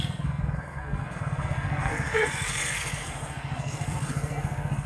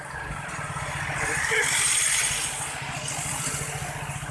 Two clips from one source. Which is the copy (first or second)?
first